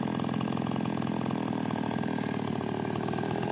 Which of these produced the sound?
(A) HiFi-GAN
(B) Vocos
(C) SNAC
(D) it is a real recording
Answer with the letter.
D